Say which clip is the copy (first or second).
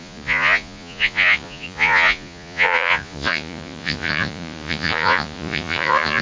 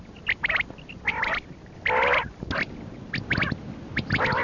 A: first